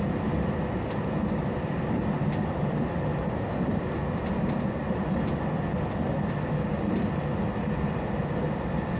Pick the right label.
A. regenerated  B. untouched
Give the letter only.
B